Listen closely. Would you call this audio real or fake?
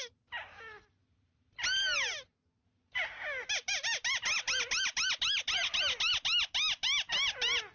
real